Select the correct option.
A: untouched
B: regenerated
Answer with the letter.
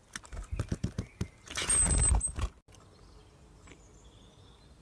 A